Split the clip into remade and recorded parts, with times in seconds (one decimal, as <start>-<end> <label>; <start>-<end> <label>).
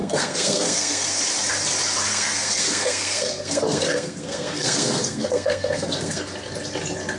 0.0-1.2 remade; 1.2-2.1 recorded; 2.1-6.2 remade; 6.2-7.2 recorded